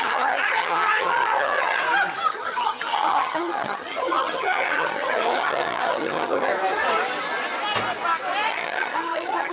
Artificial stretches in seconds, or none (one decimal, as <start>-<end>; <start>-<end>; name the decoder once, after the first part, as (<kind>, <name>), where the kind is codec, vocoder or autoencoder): 0.0-1.8 (vocoder, HiFi-GAN); 2.3-6.5; 8.5-9.5

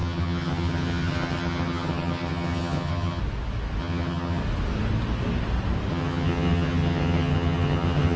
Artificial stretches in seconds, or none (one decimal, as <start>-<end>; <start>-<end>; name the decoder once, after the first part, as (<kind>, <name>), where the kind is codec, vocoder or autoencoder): 0.0-3.2 (vocoder, HiFi-GAN); 3.8-4.4; 5.9-8.2

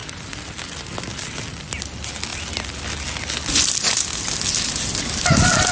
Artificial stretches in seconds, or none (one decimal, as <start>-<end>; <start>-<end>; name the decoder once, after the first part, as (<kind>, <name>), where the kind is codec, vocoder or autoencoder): none

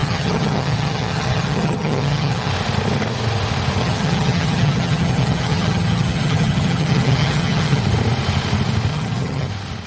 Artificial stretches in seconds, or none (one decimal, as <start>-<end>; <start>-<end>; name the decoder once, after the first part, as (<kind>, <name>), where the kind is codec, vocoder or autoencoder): 0.0-2.5 (vocoder, HiFi-GAN); 3.8-7.8; 8.9-9.5

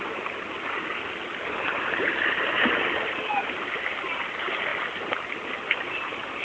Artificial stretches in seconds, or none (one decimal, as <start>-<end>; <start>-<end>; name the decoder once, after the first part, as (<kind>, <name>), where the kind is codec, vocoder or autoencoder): none

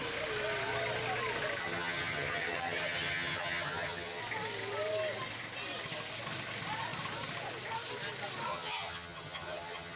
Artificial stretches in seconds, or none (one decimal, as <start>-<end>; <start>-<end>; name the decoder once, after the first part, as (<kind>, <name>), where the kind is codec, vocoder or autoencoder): 1.6-4.2 (vocoder, HiFi-GAN); 8.5-10.0

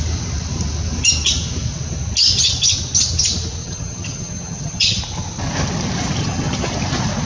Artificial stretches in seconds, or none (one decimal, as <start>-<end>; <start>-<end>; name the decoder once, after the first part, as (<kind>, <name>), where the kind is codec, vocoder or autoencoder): 3.6-5.0 (vocoder, HiFi-GAN); 6.2-6.7

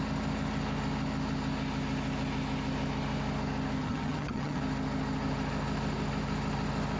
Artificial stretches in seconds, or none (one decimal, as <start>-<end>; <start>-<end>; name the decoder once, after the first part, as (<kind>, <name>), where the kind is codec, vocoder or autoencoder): 3.8-4.6 (vocoder, HiFi-GAN)